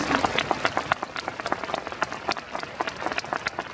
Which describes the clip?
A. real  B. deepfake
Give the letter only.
A